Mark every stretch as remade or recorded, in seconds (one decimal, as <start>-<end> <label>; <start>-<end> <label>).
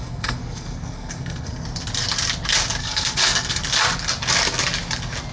0.0-1.6 remade; 1.6-2.8 recorded; 2.8-3.6 remade; 3.6-5.3 recorded